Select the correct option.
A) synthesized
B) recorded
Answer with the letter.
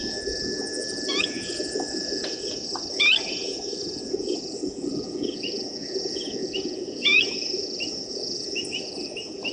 A